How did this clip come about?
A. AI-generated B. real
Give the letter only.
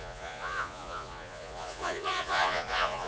A